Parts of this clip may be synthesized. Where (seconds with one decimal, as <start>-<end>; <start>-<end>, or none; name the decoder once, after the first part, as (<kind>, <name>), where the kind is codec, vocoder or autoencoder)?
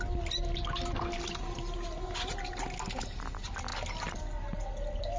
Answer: none